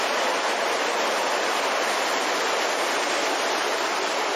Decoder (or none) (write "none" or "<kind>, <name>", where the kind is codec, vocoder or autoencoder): none